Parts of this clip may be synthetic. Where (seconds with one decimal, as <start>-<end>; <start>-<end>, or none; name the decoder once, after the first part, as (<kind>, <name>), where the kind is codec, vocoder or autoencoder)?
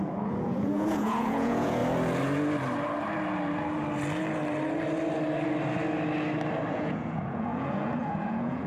0.0-1.8 (vocoder, Vocos); 6.7-8.7